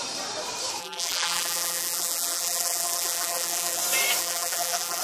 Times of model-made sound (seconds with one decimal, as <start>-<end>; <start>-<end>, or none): 0.8-3.8; 4.2-5.0